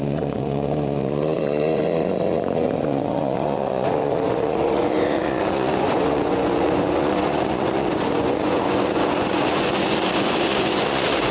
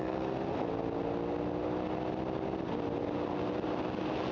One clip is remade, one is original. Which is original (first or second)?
second